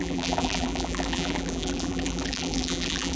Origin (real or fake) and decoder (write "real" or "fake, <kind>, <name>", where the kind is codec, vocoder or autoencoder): fake, vocoder, BigVGAN v2